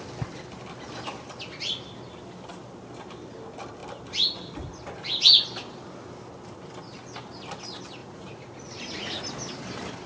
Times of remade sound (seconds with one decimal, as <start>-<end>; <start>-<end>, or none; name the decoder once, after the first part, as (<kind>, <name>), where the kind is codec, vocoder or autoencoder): 8.0-9.2 (vocoder, Vocos)